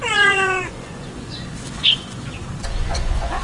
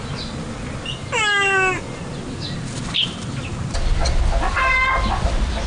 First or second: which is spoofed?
first